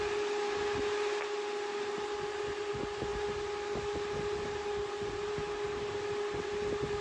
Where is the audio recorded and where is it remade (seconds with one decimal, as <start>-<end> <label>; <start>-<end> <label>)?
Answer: 0.0-7.0 recorded